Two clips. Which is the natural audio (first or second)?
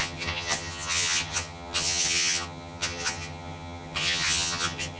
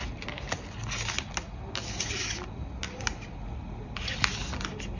second